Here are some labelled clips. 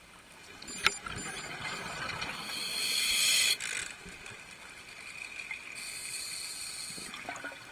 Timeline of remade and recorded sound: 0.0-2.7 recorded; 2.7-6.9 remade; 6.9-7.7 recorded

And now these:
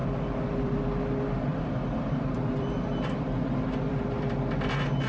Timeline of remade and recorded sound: 0.0-0.8 remade; 0.8-1.5 recorded; 1.5-4.0 remade; 4.0-5.1 recorded

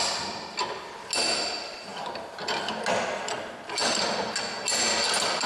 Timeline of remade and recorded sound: 0.0-5.5 recorded

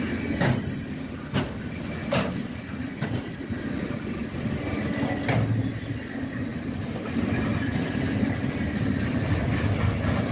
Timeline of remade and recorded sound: 0.0-2.0 recorded; 2.0-3.1 remade; 3.1-6.5 recorded; 6.5-8.1 remade; 8.1-10.3 recorded